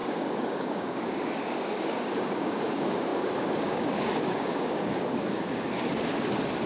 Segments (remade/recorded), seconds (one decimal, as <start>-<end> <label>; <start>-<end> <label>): 0.0-6.1 remade; 6.1-6.7 recorded